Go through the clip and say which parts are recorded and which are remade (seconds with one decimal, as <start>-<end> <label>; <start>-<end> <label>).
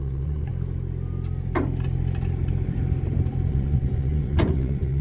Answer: 0.0-0.5 remade; 0.5-3.5 recorded; 3.5-5.0 remade